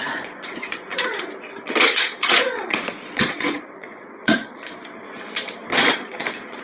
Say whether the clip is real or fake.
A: fake